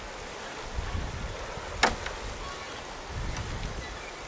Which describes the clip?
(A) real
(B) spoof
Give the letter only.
A